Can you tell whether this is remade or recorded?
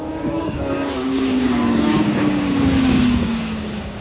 remade